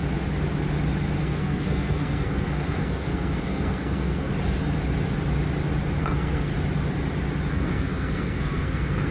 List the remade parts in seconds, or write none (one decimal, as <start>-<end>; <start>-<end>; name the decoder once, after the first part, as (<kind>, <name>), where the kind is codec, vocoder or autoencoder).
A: 1.2-4.3 (codec, SNAC); 6.0-6.5; 7.5-9.1